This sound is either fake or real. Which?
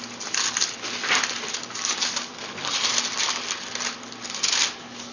real